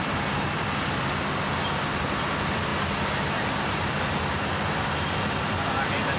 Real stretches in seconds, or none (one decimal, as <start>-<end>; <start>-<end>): 0.0-6.2